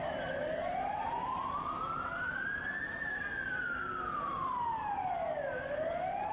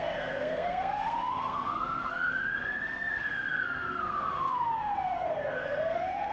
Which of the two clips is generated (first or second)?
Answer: second